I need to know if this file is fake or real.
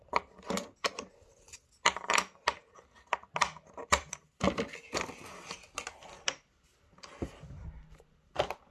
real